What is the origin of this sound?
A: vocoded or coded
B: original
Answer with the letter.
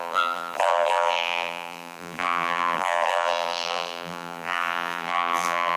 A